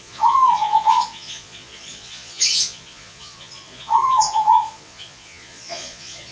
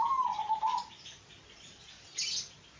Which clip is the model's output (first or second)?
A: first